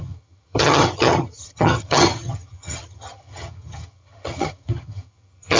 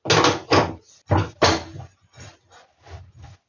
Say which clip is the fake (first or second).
first